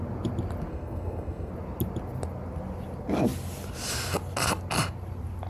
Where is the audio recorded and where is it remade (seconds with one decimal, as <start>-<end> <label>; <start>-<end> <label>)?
0.0-0.7 recorded; 0.7-1.5 remade; 1.5-5.5 recorded